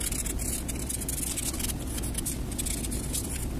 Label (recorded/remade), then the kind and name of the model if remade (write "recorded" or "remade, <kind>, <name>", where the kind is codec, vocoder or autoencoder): recorded